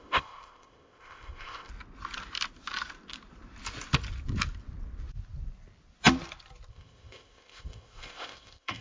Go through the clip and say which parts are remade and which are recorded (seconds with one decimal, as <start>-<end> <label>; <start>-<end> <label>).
0.0-1.7 remade; 1.7-6.7 recorded; 6.7-8.8 remade